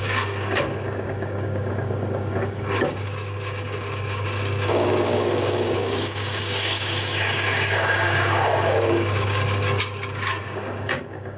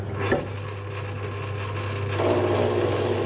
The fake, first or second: first